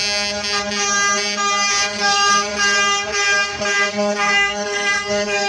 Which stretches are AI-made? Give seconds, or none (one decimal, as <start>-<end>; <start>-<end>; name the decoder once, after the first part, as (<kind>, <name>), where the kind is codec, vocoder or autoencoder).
2.0-2.5 (codec, SNAC); 3.9-5.5